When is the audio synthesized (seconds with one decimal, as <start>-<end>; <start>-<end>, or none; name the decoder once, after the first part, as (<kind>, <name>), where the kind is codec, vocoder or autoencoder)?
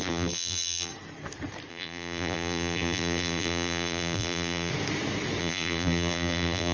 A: 0.0-0.9 (vocoder, BigVGAN v2); 1.7-4.7; 5.4-6.7